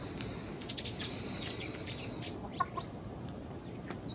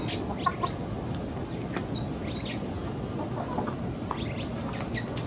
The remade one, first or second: first